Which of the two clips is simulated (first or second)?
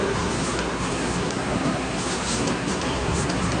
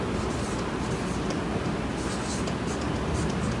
first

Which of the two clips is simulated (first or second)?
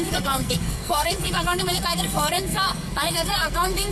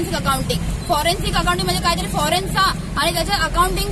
first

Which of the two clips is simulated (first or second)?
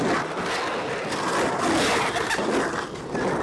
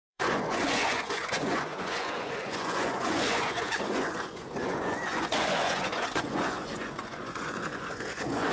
second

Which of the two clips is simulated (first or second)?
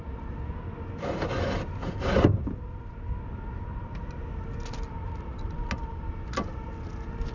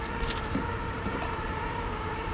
second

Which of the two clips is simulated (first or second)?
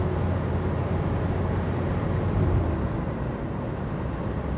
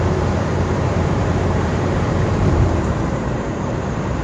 second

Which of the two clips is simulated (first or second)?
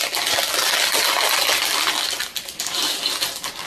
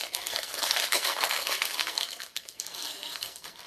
second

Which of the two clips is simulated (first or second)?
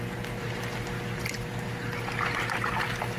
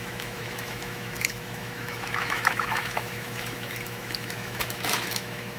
second